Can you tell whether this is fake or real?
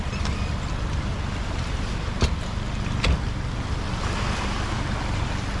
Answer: real